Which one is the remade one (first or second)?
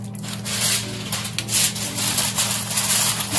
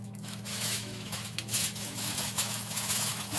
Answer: second